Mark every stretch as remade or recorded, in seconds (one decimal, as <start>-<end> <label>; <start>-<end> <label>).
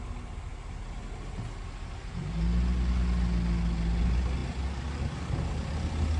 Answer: 0.0-6.2 recorded